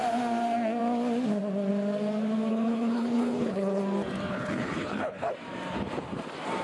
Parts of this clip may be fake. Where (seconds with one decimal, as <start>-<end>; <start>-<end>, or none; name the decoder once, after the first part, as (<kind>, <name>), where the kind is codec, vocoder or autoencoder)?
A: 2.5-3.8 (codec, HILCodec); 4.3-5.3